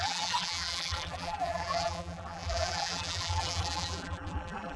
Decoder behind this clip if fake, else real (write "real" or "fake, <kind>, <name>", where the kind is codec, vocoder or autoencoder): fake, vocoder, BigVGAN v2